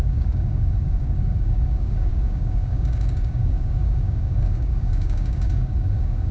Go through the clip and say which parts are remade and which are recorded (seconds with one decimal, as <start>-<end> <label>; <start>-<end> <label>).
0.0-6.3 remade